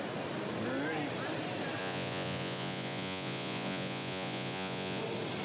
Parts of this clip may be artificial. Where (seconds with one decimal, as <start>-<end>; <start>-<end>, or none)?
1.8-5.0